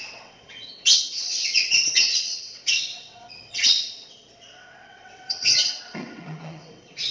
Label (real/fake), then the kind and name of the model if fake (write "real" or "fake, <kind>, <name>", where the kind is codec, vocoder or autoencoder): fake, vocoder, WaveNeXt